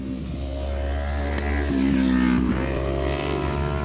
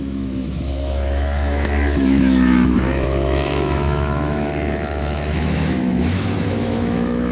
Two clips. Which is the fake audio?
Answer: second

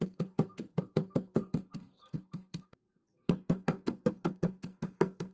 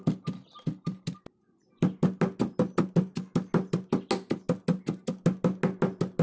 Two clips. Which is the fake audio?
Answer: first